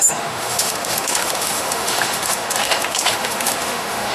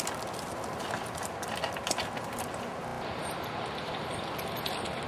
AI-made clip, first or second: first